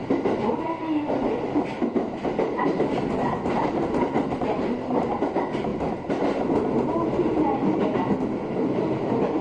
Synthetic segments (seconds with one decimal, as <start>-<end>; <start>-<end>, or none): none